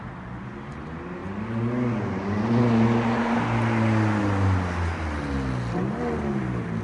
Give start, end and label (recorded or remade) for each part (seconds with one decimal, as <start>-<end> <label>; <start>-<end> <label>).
0.0-6.8 recorded